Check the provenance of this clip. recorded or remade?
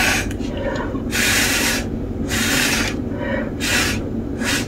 remade